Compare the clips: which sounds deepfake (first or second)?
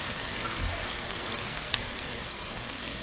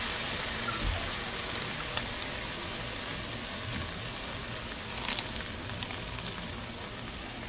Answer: first